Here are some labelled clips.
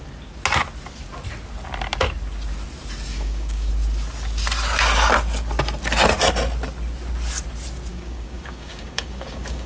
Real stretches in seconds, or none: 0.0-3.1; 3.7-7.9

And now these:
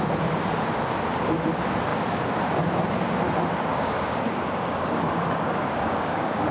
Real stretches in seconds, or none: 0.0-3.7